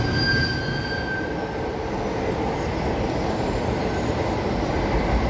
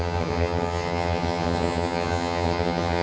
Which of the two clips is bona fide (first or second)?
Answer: first